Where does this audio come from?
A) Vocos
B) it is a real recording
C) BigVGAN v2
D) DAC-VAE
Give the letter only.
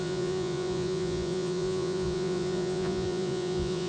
A